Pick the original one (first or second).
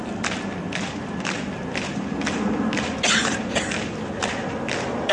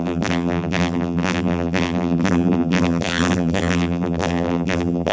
first